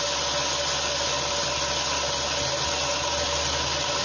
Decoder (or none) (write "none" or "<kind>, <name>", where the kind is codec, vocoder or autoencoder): none